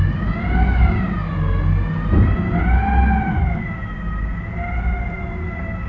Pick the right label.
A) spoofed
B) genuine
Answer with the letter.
B